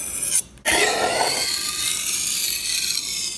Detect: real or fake real